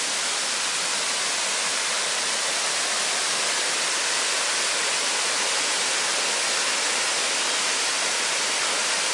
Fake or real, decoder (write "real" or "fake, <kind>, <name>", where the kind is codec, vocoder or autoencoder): real